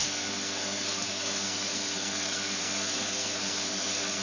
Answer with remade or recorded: remade